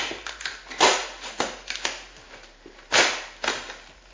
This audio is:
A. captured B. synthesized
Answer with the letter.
A